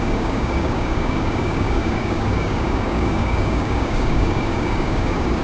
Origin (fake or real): fake